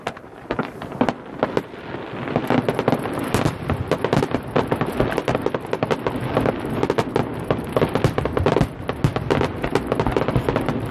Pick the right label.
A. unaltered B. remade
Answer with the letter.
A